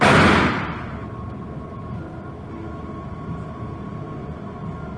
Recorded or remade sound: recorded